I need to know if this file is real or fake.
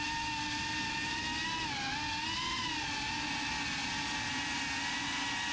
real